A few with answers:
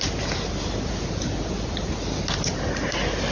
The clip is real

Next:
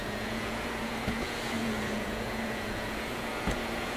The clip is fake